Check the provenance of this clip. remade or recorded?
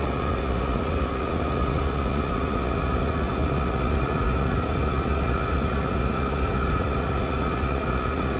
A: remade